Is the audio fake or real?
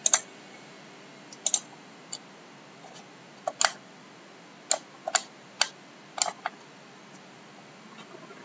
real